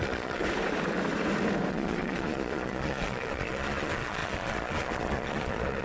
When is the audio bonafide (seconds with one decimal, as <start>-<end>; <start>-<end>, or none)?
0.4-1.7